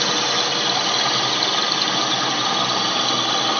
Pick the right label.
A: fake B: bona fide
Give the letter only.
B